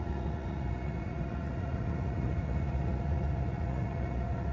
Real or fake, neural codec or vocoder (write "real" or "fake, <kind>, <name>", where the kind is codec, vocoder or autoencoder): fake, vocoder, Vocos